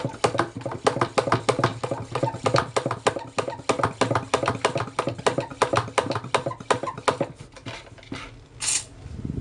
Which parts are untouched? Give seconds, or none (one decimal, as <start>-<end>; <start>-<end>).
0.0-9.4